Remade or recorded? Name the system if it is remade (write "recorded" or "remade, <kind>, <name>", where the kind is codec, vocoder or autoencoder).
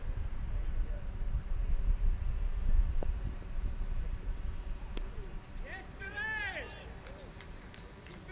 remade, vocoder, BigVGAN v2